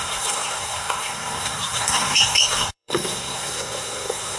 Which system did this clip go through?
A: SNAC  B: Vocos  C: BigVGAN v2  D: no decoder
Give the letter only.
A